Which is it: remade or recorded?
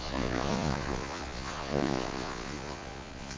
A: remade